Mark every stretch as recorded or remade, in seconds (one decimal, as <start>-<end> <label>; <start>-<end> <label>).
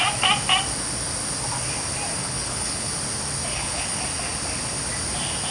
0.0-2.2 recorded; 2.2-2.9 remade; 2.9-3.5 recorded; 3.5-4.0 remade; 4.0-5.5 recorded